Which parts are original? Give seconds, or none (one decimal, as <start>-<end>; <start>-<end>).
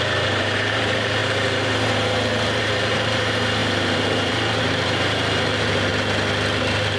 5.9-6.6